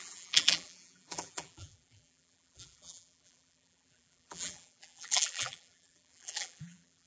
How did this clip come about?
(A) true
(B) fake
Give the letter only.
B